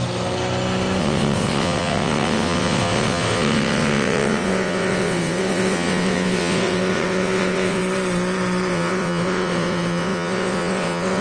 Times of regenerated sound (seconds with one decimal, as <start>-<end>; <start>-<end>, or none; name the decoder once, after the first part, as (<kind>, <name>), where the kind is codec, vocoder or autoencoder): 1.0-7.8 (vocoder, WaveNeXt); 8.7-11.2